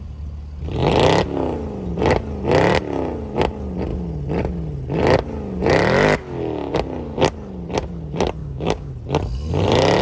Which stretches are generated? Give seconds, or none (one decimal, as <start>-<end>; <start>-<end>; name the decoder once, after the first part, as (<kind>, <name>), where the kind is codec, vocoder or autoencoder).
8.4-8.9 (codec, DAC)